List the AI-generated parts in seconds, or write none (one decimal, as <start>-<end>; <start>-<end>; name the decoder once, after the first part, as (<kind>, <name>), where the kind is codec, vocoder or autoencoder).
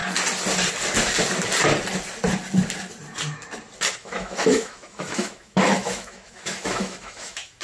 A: 4.0-7.6 (autoencoder, DAC-VAE)